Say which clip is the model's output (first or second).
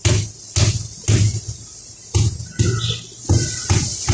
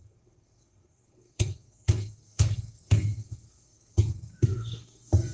second